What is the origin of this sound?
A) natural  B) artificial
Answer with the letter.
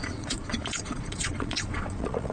B